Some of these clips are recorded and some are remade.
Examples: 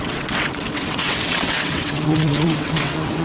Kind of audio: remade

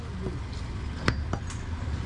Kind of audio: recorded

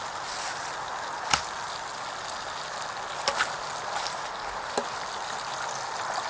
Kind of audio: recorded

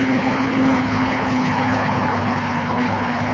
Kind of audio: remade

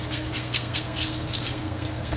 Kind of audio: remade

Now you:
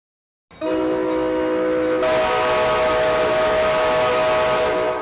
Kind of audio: recorded